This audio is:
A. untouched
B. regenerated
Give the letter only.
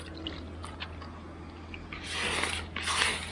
A